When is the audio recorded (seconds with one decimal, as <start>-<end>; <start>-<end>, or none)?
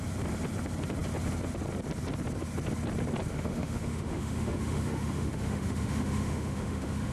0.0-3.3